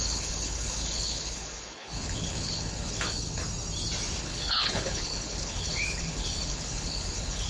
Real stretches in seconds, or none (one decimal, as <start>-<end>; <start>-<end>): 3.4-4.2